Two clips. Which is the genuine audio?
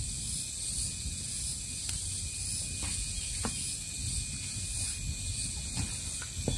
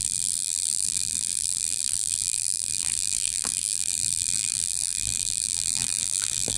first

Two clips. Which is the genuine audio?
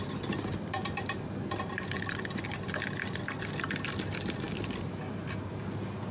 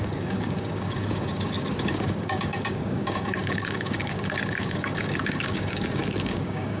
first